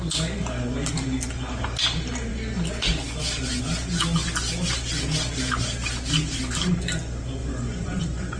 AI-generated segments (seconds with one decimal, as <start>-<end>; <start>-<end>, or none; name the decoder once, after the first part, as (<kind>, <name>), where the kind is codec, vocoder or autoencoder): 7.4-8.4 (vocoder, Vocos)